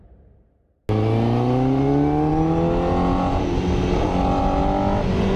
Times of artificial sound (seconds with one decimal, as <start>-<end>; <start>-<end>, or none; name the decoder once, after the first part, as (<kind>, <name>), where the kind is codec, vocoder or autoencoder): none